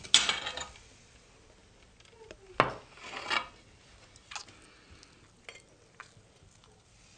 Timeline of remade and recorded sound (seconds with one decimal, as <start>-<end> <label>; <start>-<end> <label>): 0.0-7.2 recorded